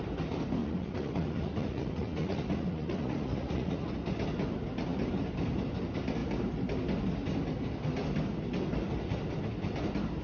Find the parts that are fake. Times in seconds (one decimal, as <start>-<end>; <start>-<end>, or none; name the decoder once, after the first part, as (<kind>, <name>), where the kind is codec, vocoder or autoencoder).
0.6-3.9 (vocoder, Vocos)